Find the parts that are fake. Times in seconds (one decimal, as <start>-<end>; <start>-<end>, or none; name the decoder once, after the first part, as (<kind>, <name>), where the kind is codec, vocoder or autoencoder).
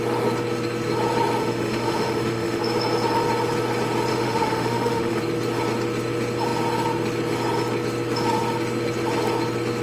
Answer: 1.4-2.6 (autoencoder, DAC-VAE); 4.1-5.2